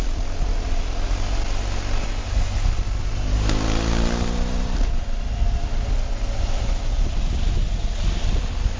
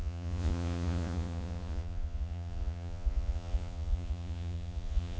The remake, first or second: second